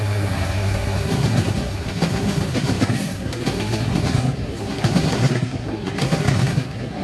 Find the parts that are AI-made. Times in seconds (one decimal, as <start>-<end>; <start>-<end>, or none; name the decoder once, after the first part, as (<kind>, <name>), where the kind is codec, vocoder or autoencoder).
0.0-7.0 (codec, SNAC)